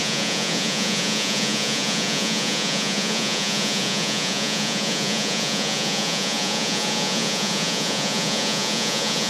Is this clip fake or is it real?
fake